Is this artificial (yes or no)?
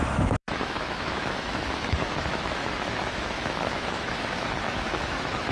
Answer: yes